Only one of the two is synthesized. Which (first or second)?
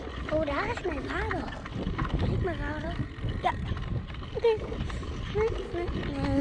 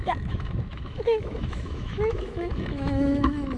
second